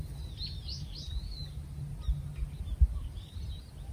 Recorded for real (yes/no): yes